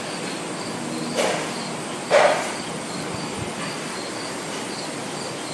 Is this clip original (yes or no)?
yes